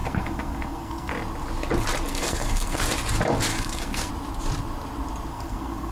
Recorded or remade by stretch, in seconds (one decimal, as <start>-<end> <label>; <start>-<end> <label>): 0.0-1.1 remade; 1.1-2.1 recorded; 2.1-2.8 remade; 2.8-3.5 recorded; 3.5-4.1 remade; 4.1-5.3 recorded; 5.3-5.9 remade